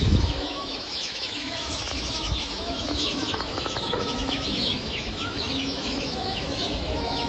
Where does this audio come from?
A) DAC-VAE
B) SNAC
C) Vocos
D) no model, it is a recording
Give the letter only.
A